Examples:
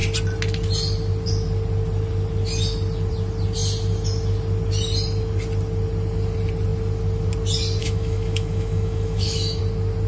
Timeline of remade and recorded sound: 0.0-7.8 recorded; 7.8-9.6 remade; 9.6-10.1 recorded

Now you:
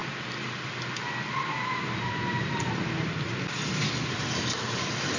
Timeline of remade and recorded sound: 0.0-5.2 recorded

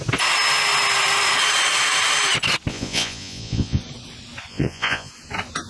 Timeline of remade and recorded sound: 0.0-2.7 recorded; 2.7-3.8 remade; 3.8-4.5 recorded; 4.5-5.1 remade; 5.1-5.7 recorded

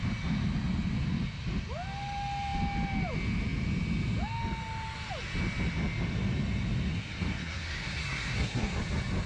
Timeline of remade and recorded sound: 0.0-6.9 recorded; 6.9-8.8 remade; 8.8-9.3 recorded

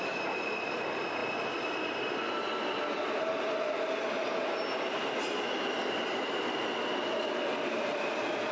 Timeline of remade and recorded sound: 0.0-8.5 recorded